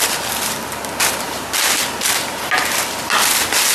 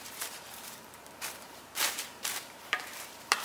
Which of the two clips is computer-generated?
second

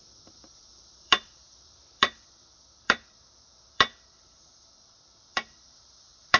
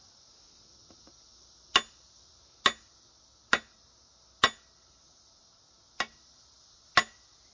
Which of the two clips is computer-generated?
first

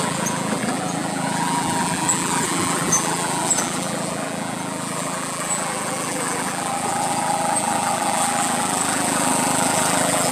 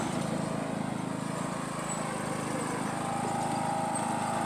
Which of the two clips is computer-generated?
first